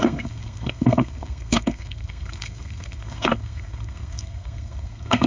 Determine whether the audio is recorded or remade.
remade